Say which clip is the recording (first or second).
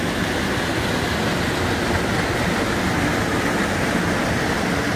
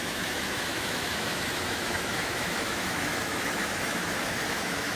first